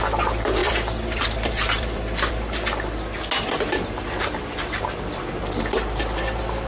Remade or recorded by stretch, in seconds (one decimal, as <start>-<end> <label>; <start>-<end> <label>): 0.0-0.6 recorded; 0.6-2.3 remade; 2.3-6.7 recorded